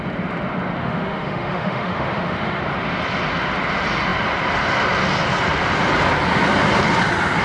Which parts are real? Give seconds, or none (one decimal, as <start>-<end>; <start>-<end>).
0.0-0.8; 2.6-7.4